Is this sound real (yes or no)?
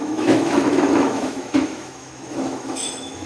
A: no